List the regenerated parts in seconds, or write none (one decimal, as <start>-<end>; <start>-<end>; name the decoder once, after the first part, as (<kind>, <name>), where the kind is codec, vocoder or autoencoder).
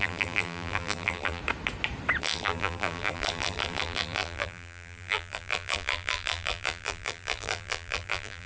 0.0-1.4 (vocoder, BigVGAN v2); 2.2-8.5